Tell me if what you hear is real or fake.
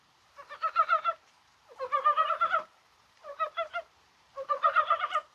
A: fake